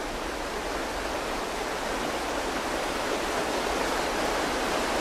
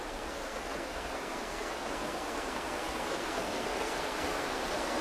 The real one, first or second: first